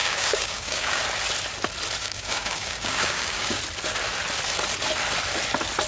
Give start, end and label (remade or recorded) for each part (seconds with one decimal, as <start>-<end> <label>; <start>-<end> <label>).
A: 0.0-1.0 remade; 1.0-2.0 recorded; 2.0-3.6 remade; 3.6-5.9 recorded